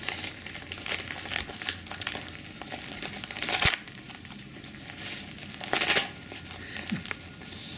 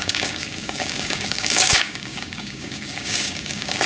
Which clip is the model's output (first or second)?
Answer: second